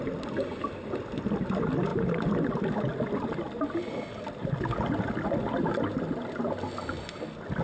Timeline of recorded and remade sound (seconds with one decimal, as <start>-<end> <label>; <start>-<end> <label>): 0.0-4.4 recorded; 4.4-5.1 remade; 5.1-7.6 recorded

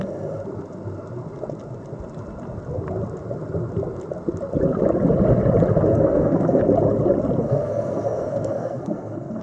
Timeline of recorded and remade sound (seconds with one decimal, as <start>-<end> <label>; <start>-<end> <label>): 0.0-5.9 recorded; 5.9-6.6 remade; 6.6-7.4 recorded; 7.4-9.4 remade

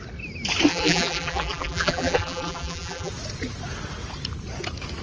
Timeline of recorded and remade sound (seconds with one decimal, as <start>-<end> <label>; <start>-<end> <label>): 0.0-0.7 recorded; 0.7-3.1 remade; 3.1-5.0 recorded

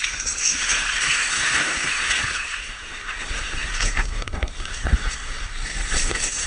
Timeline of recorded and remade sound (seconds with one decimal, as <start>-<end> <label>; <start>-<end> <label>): 0.0-6.5 remade